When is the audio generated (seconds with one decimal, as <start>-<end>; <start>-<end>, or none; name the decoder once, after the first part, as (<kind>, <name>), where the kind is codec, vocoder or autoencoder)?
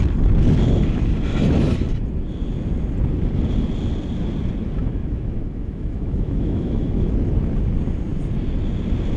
4.8-7.1 (autoencoder, DAC-VAE)